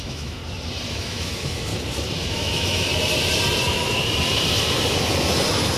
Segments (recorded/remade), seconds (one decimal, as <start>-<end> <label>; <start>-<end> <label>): 0.0-0.4 remade; 0.4-0.9 recorded; 0.9-1.7 remade; 1.7-2.3 recorded; 2.3-2.9 remade; 2.9-5.8 recorded